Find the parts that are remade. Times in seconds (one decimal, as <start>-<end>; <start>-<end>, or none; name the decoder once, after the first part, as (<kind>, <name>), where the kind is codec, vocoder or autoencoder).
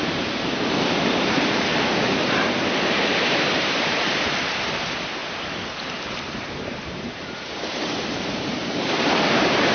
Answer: 0.0-1.7 (vocoder, BigVGAN v2); 2.9-5.2; 6.3-9.7